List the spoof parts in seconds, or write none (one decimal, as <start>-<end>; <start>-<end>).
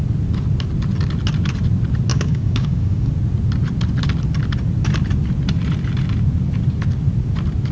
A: 2.1-3.1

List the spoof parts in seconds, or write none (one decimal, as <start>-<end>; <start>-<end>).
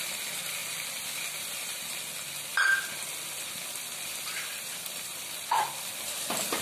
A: 0.6-1.8; 2.5-6.0